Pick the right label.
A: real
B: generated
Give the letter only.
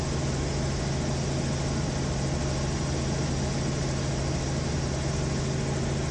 A